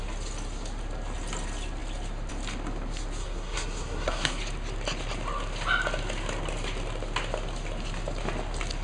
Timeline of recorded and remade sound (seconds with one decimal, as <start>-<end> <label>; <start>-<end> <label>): 0.0-3.2 recorded; 3.2-4.4 remade; 4.4-8.8 recorded